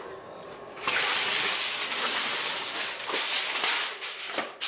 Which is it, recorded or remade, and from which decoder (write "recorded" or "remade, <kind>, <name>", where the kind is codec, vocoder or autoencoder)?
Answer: recorded